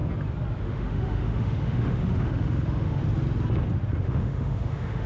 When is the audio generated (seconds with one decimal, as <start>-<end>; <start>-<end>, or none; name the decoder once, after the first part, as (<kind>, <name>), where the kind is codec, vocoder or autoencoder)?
0.6-3.0 (autoencoder, DAC-VAE); 4.0-5.1